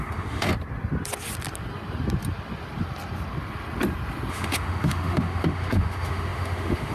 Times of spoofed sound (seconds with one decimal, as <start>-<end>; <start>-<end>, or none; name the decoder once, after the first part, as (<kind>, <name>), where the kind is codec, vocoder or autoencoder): 0.0-0.5 (autoencoder, DAC-VAE); 4.3-6.9